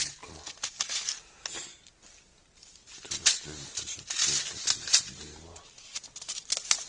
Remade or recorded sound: recorded